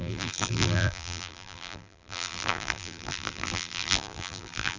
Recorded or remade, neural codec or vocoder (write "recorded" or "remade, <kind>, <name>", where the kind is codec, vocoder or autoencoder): remade, vocoder, BigVGAN v2